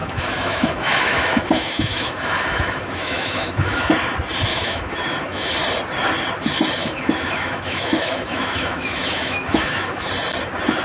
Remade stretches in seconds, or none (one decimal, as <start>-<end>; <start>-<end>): 0.0-3.9; 4.5-5.5; 6.8-10.1

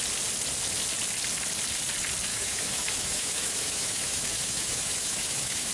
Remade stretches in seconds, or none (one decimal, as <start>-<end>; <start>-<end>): 2.3-5.7

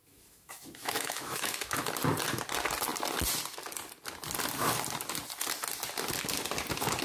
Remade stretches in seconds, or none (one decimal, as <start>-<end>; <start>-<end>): 0.0-1.8

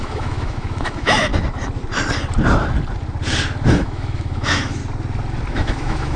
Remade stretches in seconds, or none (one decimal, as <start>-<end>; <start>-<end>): 0.0-1.3; 3.7-4.8; 5.5-6.2